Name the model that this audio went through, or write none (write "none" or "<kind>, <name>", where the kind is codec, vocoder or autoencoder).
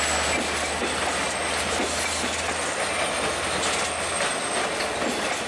none